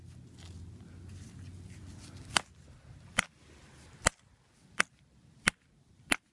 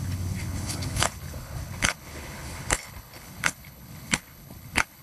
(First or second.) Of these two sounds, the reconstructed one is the second